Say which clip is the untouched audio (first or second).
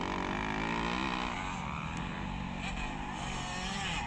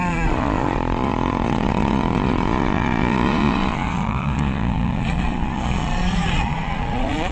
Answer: first